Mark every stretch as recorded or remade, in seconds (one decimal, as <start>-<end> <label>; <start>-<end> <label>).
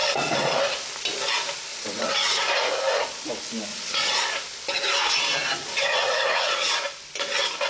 0.0-0.6 remade; 0.6-1.7 recorded; 1.7-2.4 remade; 2.4-3.7 recorded; 3.7-4.2 remade; 4.2-5.7 recorded; 5.7-6.7 remade; 6.7-7.7 recorded